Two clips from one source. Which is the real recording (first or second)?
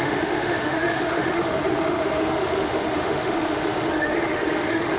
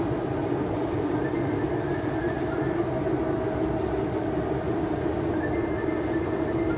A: second